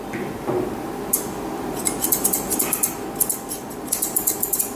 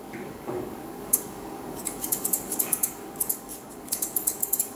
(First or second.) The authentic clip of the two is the first